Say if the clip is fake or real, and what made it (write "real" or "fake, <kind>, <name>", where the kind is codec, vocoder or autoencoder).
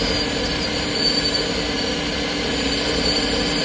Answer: real